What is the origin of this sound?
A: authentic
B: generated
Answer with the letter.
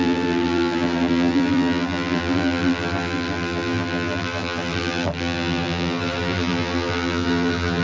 B